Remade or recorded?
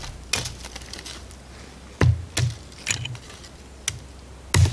recorded